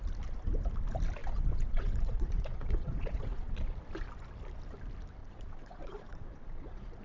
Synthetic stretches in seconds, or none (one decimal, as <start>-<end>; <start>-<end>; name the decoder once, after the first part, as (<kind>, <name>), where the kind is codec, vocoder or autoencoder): 1.2-3.5 (vocoder, Vocos); 5.2-7.0